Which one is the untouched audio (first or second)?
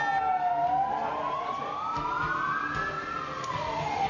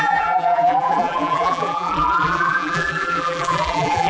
first